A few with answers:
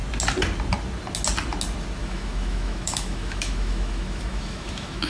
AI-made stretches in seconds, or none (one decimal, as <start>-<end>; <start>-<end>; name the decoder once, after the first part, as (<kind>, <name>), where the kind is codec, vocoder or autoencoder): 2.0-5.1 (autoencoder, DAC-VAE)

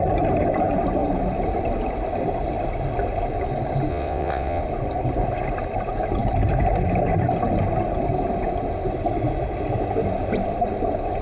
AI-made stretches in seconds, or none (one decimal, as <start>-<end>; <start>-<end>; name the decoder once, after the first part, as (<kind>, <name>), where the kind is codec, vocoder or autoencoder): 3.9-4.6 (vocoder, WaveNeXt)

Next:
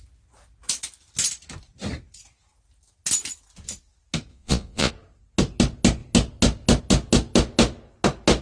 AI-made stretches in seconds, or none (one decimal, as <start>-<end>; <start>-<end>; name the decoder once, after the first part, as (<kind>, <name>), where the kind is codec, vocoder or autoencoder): 4.3-4.9 (vocoder, Vocos)

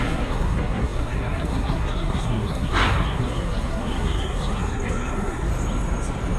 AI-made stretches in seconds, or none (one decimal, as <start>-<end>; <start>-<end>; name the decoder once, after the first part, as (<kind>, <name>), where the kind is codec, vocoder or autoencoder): 0.0-5.5 (codec, SNAC)